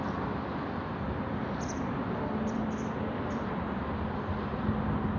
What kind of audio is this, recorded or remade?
recorded